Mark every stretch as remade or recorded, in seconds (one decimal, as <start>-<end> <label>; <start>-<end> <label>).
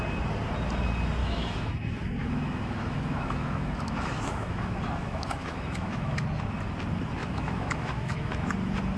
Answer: 0.0-1.2 recorded; 1.2-1.7 remade; 1.7-2.2 recorded; 2.2-6.2 remade; 6.2-7.2 recorded; 7.2-8.5 remade; 8.5-9.0 recorded